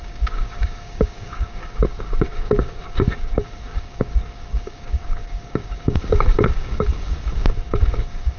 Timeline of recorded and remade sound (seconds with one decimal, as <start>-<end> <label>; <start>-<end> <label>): 0.0-8.4 remade